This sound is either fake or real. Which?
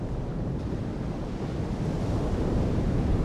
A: real